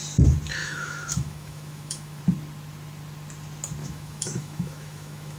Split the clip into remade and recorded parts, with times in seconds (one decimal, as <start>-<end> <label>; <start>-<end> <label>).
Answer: 0.0-0.6 recorded; 0.6-2.2 remade; 2.2-3.8 recorded; 3.8-5.4 remade